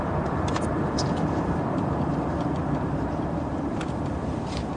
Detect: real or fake fake